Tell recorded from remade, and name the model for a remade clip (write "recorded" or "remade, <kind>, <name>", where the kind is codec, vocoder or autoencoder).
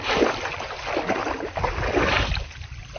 recorded